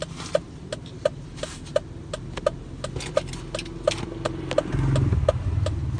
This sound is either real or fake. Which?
real